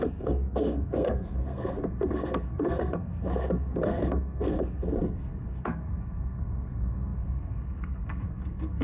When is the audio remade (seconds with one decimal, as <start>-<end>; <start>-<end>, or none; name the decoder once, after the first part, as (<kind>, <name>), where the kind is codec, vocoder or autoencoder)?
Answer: 0.0-8.8 (codec, SNAC)